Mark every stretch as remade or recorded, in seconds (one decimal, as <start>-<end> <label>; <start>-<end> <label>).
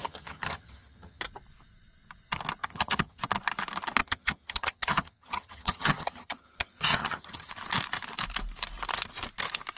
0.0-1.2 remade; 1.2-2.6 recorded; 2.6-3.2 remade; 3.2-4.0 recorded; 4.0-7.5 remade; 7.5-9.8 recorded